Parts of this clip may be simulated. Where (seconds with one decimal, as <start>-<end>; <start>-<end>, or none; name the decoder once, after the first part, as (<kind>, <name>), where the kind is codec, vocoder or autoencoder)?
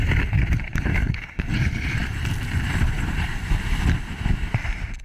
0.9-1.5 (codec, SNAC)